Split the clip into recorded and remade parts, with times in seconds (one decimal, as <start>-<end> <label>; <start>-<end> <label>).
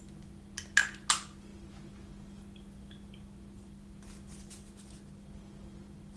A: 0.0-6.2 recorded